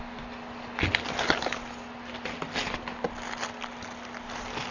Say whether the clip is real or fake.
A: real